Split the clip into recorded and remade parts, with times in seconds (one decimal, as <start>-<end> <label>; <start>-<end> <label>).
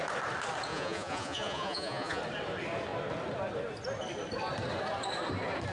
0.0-0.7 recorded; 0.7-2.2 remade; 2.2-5.7 recorded